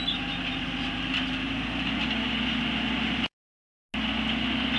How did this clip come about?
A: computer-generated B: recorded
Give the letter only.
B